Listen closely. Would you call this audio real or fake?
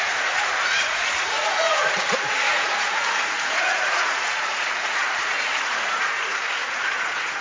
fake